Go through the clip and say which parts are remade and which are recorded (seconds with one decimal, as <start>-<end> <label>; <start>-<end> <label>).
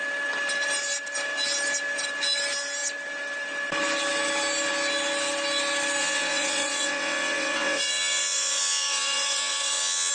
0.0-6.0 recorded; 6.0-10.1 remade